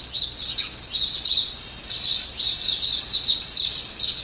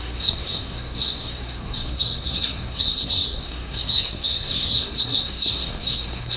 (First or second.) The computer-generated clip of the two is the second